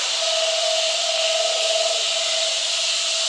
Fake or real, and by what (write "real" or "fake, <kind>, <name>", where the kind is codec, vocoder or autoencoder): real